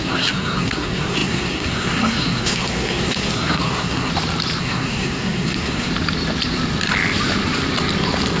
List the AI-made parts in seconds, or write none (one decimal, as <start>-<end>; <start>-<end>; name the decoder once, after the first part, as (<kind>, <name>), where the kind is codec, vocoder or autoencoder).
0.0-4.1 (codec, SNAC); 4.6-5.9